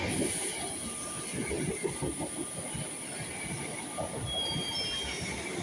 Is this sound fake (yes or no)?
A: no